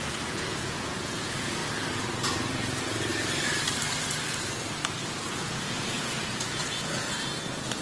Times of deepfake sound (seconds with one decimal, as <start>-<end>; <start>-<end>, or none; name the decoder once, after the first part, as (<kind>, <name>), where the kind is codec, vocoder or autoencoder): 0.0-1.6 (vocoder, Vocos); 2.5-3.1; 5.3-7.8